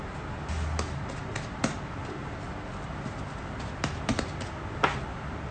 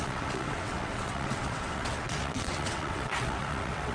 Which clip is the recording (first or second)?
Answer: first